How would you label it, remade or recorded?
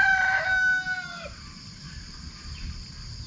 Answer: recorded